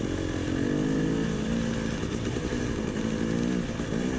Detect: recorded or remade recorded